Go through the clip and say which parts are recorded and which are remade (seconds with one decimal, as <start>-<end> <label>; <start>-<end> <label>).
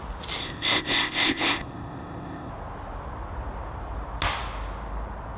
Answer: 0.0-0.4 recorded; 0.4-2.5 remade; 2.5-5.4 recorded